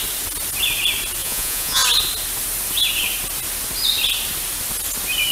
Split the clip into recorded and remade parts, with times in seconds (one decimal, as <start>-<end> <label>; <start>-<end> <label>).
0.0-1.2 recorded; 1.2-1.8 remade; 1.8-5.3 recorded